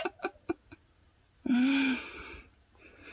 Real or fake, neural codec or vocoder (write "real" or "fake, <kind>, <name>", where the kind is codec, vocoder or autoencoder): real